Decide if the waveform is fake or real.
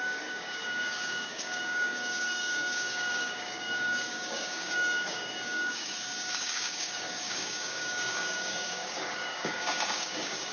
fake